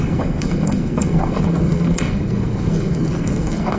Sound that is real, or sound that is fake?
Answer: fake